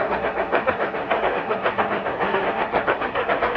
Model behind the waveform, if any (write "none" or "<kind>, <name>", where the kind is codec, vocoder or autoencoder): codec, SNAC